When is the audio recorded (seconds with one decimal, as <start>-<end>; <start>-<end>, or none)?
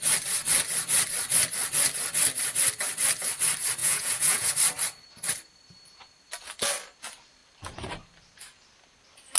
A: 0.0-3.8; 4.5-9.4